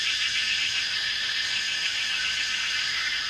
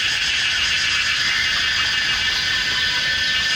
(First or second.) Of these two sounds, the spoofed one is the first